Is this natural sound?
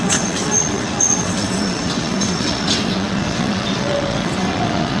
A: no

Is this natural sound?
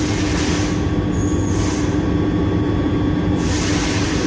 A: yes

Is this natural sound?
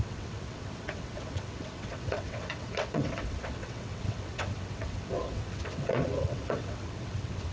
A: no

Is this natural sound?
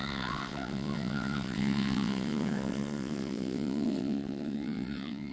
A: no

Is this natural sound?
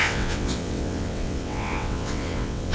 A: no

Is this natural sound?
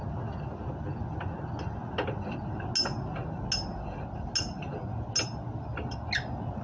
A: yes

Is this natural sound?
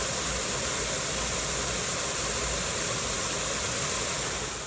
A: yes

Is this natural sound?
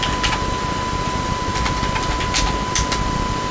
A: yes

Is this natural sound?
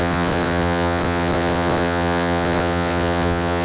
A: no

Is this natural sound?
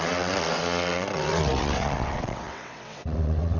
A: no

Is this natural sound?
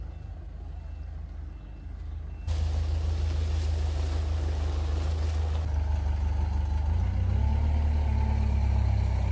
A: yes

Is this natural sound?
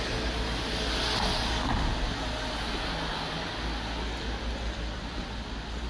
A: yes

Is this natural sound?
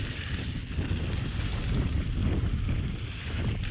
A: yes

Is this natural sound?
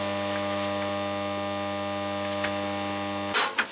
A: yes